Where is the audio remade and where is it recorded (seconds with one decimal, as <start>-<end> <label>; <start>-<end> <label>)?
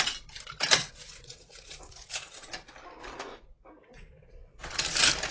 0.0-0.8 recorded; 0.8-2.5 remade; 2.5-3.8 recorded; 3.8-4.7 remade; 4.7-5.3 recorded